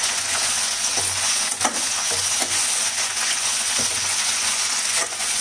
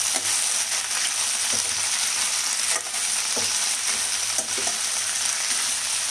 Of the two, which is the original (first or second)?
second